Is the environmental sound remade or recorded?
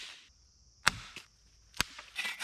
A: recorded